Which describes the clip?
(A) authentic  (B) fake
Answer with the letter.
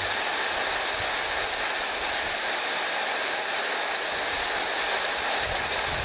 A